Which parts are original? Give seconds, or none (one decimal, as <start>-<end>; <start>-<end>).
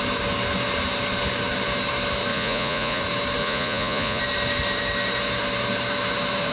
0.0-2.3; 3.0-3.4; 4.2-6.5